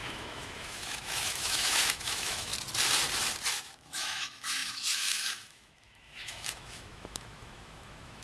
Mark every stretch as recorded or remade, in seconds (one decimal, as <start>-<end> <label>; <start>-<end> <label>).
0.0-2.5 remade; 2.5-3.6 recorded; 3.6-8.2 remade